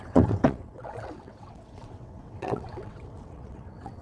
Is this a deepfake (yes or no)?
yes